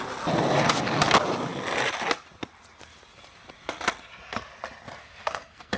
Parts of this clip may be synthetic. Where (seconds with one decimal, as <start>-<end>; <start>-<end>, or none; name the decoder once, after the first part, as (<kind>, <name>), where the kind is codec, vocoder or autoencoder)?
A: 5.0-5.8 (codec, SNAC)